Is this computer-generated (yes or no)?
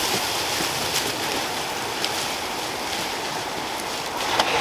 no